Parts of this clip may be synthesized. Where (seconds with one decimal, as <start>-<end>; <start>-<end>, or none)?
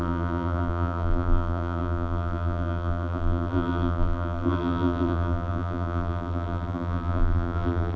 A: 0.0-8.0